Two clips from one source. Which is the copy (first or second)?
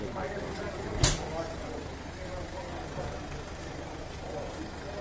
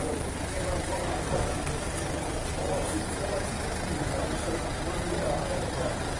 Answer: second